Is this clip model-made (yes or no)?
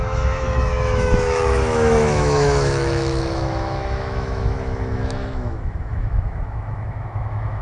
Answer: yes